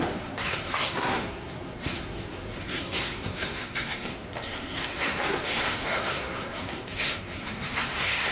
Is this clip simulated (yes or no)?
yes